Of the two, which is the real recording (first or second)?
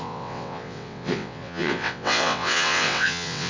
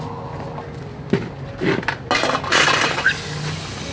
second